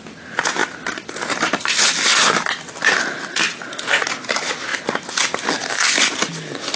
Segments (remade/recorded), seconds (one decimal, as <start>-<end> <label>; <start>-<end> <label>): 0.0-6.8 recorded